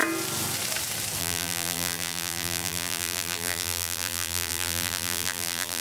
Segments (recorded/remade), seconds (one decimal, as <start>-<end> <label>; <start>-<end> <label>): 0.0-1.2 recorded; 1.2-5.8 remade